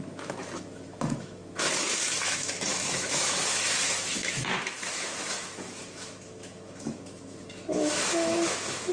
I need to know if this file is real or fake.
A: fake